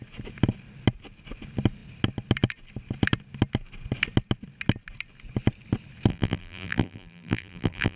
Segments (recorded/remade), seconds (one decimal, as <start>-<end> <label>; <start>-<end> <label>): 0.0-6.1 recorded; 6.1-8.0 remade